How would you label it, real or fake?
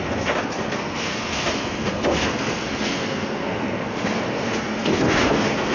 fake